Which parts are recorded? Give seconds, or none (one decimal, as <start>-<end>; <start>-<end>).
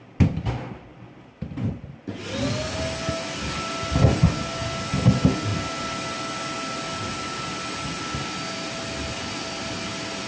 0.0-10.3